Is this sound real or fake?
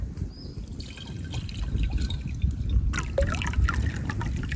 real